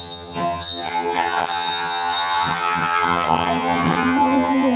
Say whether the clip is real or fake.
fake